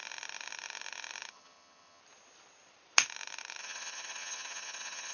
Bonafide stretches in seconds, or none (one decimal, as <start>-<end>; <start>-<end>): 0.0-1.3; 2.0-3.6